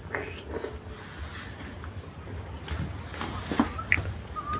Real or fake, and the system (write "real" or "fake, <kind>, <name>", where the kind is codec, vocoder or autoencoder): real